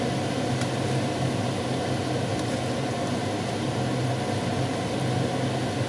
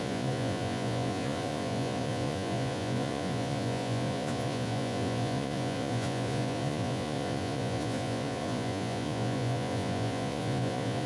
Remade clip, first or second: second